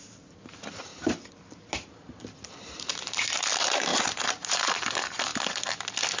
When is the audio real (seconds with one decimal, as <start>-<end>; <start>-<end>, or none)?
0.9-2.5; 3.9-4.5; 5.3-6.2